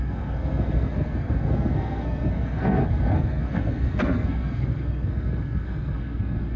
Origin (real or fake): fake